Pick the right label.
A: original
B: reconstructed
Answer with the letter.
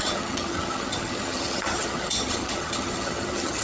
B